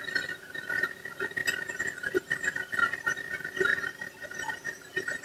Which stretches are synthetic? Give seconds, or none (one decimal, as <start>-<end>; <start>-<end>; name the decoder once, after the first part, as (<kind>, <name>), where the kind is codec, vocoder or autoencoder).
3.7-5.2 (vocoder, BigVGAN v2)